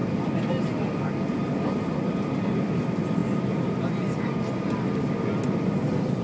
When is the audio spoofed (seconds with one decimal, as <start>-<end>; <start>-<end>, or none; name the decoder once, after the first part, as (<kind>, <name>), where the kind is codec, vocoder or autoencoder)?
none